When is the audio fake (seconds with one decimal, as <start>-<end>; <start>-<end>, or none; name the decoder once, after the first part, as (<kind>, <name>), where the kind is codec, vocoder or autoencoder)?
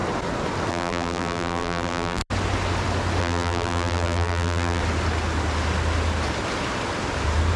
0.7-2.2 (vocoder, BigVGAN v2); 3.2-4.8